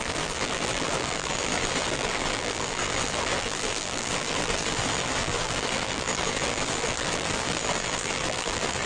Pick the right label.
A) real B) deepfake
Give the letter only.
B